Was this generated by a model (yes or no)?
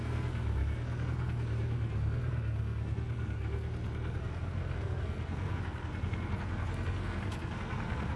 yes